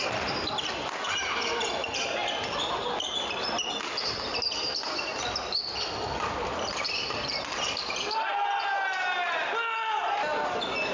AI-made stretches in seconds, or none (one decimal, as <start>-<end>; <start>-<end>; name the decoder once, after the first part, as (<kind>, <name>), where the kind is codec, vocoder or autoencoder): none